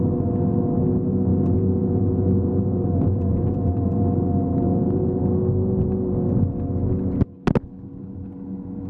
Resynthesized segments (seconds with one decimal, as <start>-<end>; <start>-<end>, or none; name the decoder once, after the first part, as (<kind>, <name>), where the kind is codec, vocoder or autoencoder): 1.3-5.2 (vocoder, Vocos)